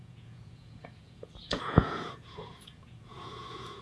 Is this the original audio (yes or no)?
no